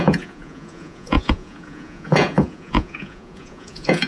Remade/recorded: remade